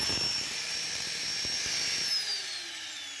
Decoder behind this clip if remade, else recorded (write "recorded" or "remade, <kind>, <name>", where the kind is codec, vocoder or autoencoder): recorded